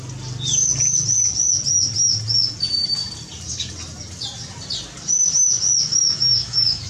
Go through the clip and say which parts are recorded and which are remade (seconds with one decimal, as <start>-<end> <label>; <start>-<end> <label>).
0.0-5.9 recorded; 5.9-6.9 remade